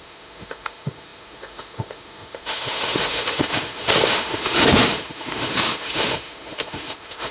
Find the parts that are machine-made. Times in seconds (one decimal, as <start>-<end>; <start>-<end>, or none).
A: 0.0-7.3